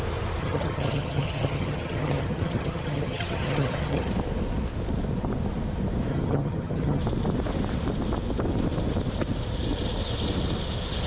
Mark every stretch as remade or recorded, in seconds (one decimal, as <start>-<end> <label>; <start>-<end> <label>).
0.0-0.4 recorded; 0.4-4.1 remade; 4.1-6.1 recorded; 6.1-7.0 remade; 7.0-11.1 recorded